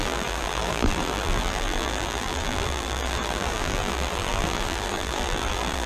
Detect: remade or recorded remade